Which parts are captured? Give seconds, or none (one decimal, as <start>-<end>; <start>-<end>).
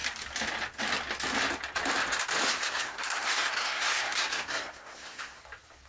0.0-2.5; 5.4-5.9